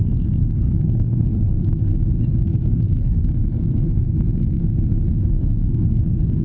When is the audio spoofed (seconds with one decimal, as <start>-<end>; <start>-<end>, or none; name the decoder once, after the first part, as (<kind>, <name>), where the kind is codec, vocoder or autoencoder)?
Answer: 0.0-1.9 (codec, SNAC); 2.4-4.6; 5.3-6.4